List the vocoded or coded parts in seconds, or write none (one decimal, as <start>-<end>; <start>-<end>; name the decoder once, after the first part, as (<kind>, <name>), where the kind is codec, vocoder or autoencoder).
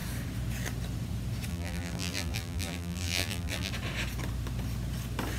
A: 1.5-3.7 (vocoder, BigVGAN v2)